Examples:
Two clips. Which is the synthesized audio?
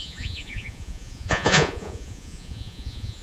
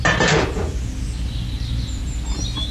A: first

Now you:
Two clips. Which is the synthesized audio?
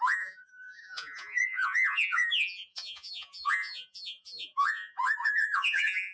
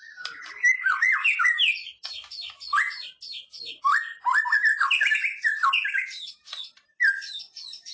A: first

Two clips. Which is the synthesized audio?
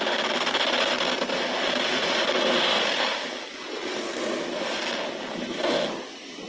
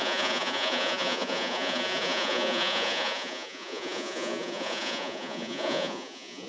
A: second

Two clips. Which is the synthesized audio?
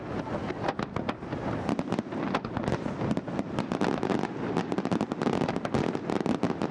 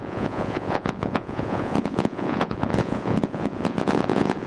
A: second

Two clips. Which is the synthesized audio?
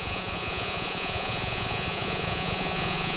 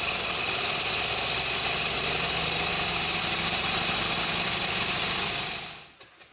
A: first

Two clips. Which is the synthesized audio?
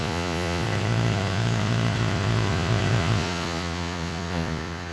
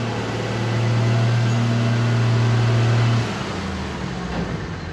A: first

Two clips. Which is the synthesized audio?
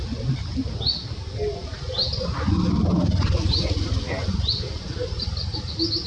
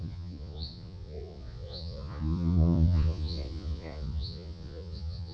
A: second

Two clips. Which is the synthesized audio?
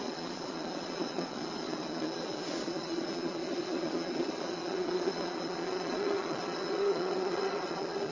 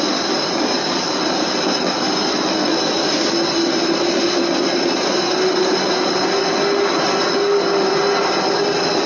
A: first